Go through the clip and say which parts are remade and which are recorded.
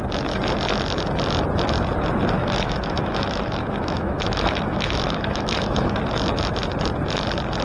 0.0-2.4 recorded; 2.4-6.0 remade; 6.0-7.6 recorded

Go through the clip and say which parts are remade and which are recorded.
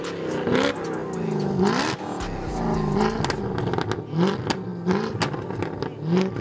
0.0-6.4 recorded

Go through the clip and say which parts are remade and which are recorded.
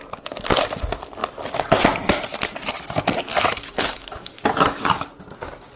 0.0-3.3 recorded; 3.3-4.9 remade; 4.9-5.8 recorded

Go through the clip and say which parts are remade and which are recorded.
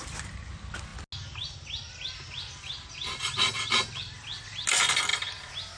0.0-5.8 recorded